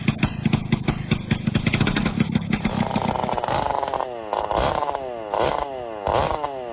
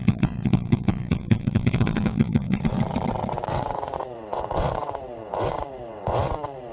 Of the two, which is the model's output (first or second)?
second